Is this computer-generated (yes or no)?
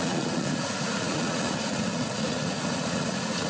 yes